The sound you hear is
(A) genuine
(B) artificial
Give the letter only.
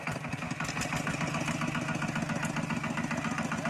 A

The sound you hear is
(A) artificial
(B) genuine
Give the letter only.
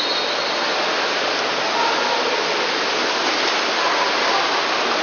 B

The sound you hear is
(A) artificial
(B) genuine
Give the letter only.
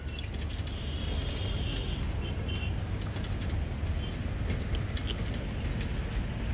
B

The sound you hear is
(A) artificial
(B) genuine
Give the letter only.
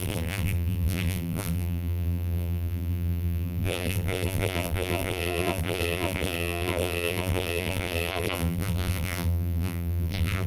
A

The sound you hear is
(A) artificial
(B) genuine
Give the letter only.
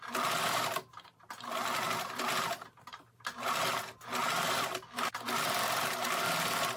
B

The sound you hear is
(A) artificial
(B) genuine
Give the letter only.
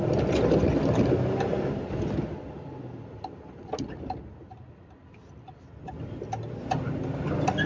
B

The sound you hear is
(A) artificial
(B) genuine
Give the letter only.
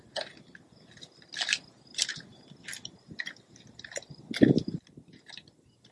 B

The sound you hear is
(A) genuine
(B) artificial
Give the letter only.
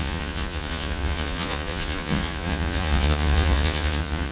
B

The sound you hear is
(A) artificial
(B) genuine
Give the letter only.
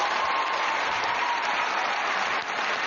A